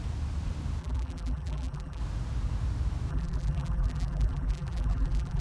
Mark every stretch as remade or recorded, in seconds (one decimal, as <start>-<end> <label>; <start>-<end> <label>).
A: 0.0-0.8 recorded; 0.8-2.0 remade; 2.0-3.1 recorded; 3.1-5.4 remade